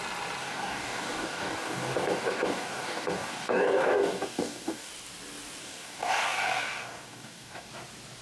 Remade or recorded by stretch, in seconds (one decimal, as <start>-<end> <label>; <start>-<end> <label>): 0.0-0.4 recorded; 0.4-4.9 remade; 4.9-5.6 recorded; 5.6-7.7 remade; 7.7-8.2 recorded